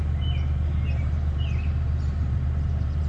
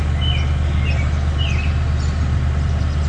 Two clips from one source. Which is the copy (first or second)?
first